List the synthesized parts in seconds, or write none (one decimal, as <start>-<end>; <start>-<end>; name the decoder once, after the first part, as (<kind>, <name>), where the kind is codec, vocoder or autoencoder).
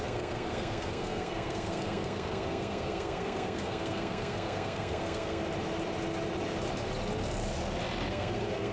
0.0-5.4 (codec, SNAC); 8.1-8.7